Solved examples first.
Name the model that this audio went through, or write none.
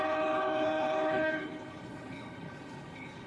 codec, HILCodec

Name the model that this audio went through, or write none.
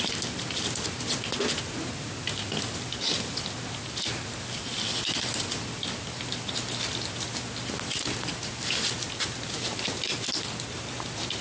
none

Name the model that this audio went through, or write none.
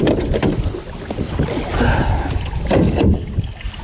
none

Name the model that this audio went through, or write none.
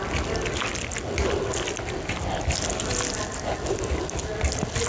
none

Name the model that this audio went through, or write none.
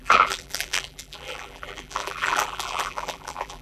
vocoder, BigVGAN v2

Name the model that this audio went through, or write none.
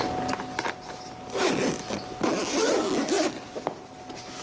none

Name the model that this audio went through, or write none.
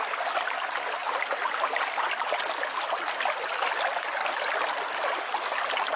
none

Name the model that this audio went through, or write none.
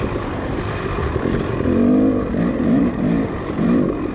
none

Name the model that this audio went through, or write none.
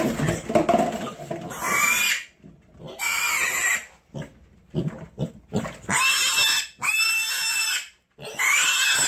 none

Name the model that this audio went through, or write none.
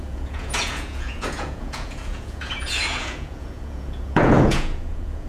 vocoder, Vocos